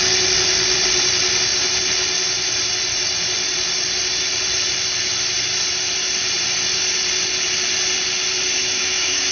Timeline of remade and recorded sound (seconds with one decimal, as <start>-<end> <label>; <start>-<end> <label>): 0.0-8.6 recorded; 8.6-9.3 remade